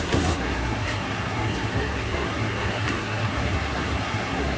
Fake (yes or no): yes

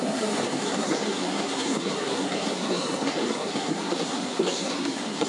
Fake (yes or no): yes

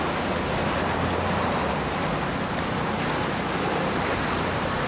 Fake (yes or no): no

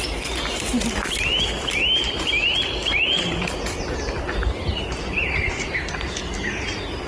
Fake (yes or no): no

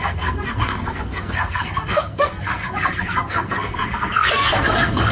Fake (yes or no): yes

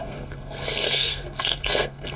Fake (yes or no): yes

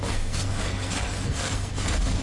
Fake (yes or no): yes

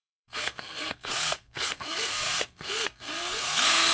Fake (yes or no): yes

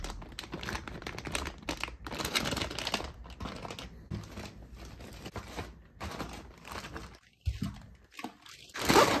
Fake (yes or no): no